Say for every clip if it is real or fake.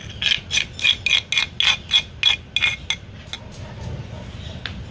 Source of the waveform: real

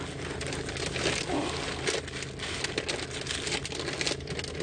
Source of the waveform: real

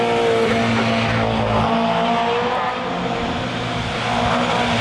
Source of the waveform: real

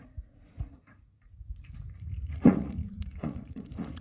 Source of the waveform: fake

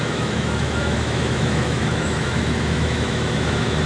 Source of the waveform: fake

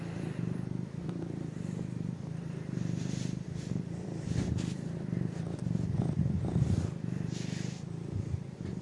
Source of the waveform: fake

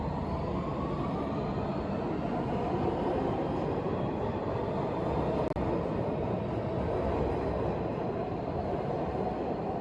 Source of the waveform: real